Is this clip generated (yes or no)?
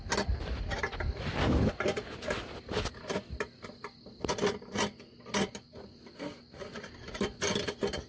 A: no